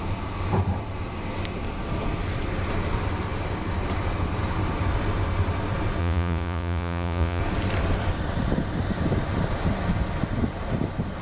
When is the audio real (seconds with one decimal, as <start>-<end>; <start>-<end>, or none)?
0.0-6.0; 7.4-11.2